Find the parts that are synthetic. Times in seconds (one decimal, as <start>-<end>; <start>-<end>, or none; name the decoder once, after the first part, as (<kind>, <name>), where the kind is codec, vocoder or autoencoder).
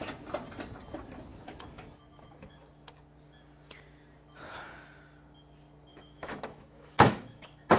1.3-2.6 (autoencoder, DAC-VAE); 5.9-7.8